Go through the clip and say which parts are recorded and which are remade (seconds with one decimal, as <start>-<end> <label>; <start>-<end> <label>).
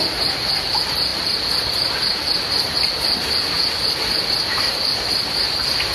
0.0-5.9 recorded